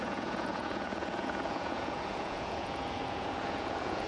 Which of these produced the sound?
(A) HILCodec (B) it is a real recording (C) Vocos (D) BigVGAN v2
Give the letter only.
C